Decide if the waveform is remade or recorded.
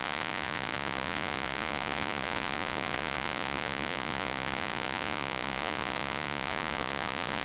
remade